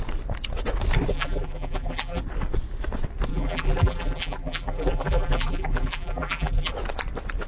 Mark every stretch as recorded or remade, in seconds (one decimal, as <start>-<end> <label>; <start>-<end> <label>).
0.0-1.1 recorded; 1.1-2.2 remade; 2.2-3.3 recorded; 3.3-6.7 remade; 6.7-7.5 recorded

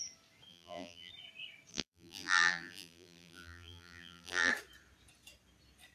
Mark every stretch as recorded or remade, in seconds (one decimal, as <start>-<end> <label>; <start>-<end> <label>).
0.0-0.5 recorded; 0.5-1.1 remade; 1.1-1.7 recorded; 1.7-4.5 remade; 4.5-5.9 recorded

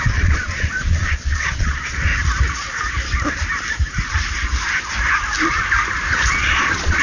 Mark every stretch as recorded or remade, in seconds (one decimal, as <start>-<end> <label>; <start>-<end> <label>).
0.0-2.1 remade; 2.1-6.3 recorded; 6.3-7.0 remade

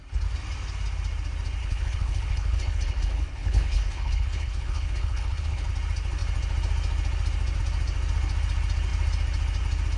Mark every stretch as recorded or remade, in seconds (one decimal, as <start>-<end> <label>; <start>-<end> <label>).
0.0-1.6 recorded; 1.6-5.7 remade; 5.7-10.0 recorded

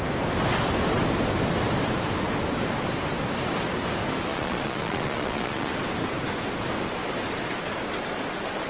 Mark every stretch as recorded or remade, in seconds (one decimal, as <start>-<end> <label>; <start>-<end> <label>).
0.0-4.3 recorded; 4.3-5.7 remade; 5.7-8.7 recorded

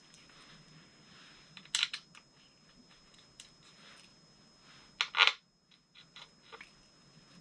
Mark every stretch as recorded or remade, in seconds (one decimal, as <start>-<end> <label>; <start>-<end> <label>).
0.0-7.4 recorded

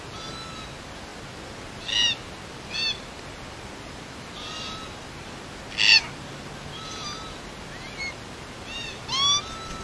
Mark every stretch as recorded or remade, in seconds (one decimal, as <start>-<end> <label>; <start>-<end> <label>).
0.0-9.8 recorded

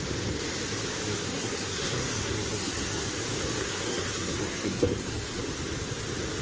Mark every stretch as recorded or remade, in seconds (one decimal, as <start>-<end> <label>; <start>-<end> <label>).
0.0-1.1 recorded; 1.1-3.1 remade; 3.1-3.6 recorded; 3.6-5.4 remade; 5.4-6.4 recorded